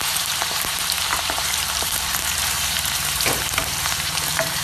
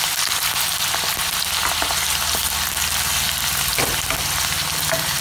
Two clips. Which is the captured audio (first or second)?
second